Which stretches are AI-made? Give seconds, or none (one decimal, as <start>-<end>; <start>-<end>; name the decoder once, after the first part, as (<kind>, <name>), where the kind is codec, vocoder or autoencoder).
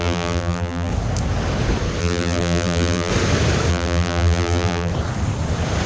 0.0-0.9 (vocoder, BigVGAN v2); 2.0-3.1; 3.7-4.9